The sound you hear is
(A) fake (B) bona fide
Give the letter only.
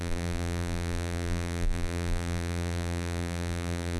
A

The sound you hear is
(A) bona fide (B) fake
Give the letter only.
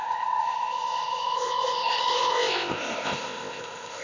B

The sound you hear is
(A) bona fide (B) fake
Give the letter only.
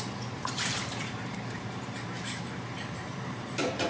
B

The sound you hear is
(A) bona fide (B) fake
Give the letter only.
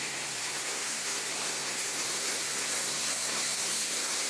B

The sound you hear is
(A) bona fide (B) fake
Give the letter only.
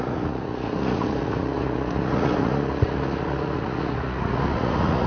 B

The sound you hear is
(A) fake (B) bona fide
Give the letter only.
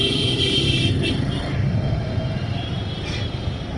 A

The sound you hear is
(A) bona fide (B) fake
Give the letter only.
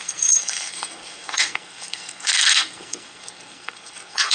B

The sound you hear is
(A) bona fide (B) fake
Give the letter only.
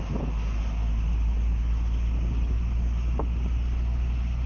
A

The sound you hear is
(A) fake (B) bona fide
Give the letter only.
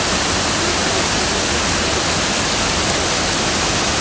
B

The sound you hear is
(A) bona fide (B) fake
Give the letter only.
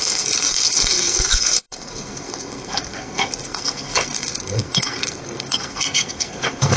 B